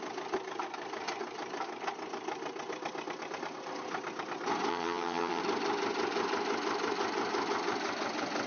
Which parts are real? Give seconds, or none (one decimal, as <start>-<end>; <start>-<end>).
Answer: 0.0-4.7; 5.4-8.5